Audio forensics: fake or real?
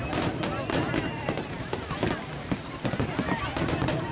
real